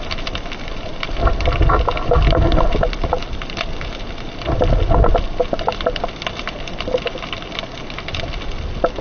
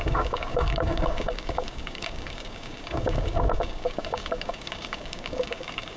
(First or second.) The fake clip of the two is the second